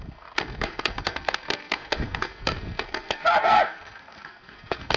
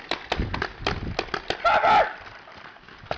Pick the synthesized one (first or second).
first